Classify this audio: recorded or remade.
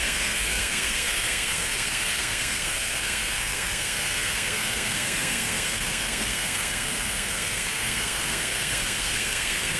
remade